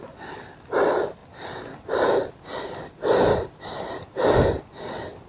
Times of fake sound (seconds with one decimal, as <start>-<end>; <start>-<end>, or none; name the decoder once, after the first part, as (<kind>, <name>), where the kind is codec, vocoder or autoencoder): none